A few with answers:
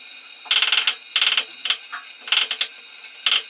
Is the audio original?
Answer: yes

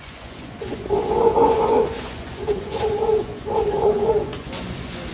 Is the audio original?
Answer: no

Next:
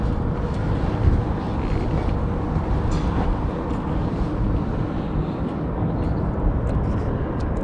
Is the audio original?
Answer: yes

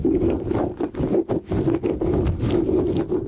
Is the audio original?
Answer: yes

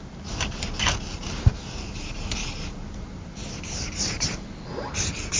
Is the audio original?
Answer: yes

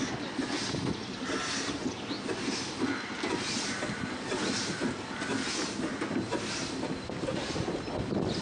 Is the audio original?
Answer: yes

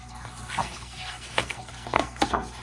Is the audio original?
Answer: no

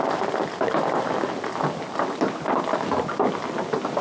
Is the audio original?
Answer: yes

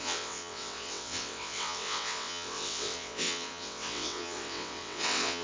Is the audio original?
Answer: no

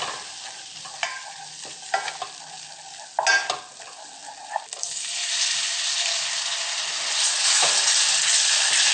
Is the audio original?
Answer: yes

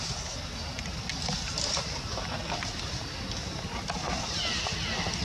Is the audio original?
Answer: yes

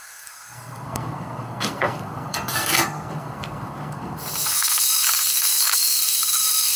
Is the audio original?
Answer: no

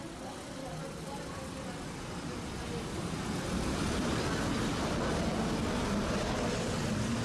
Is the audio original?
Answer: yes